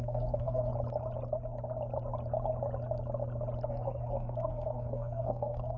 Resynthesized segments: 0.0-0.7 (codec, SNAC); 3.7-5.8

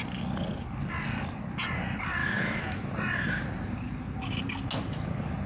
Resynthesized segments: 2.2-2.9 (autoencoder, DAC-VAE)

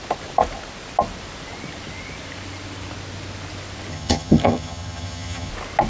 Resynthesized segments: 3.9-5.5 (vocoder, HiFi-GAN)

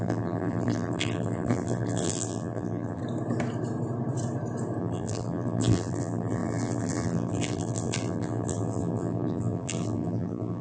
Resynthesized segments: 0.0-3.0 (vocoder, BigVGAN v2); 4.8-10.6

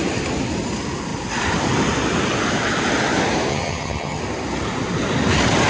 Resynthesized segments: 3.5-4.2 (vocoder, HiFi-GAN)

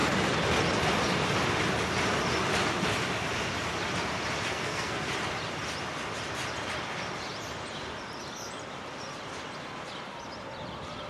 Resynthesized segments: 4.5-5.1 (codec, SNAC)

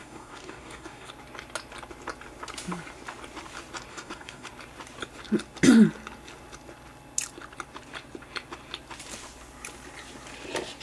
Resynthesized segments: 0.0-1.1 (codec, DAC); 3.9-4.5